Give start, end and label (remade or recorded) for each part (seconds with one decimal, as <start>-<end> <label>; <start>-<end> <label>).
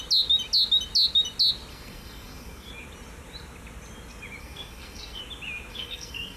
0.0-1.7 recorded; 1.7-2.7 remade; 2.7-4.4 recorded; 4.4-5.2 remade; 5.2-5.7 recorded; 5.7-6.4 remade